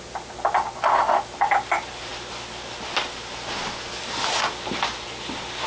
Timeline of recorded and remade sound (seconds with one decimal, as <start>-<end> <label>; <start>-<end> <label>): 0.0-5.7 recorded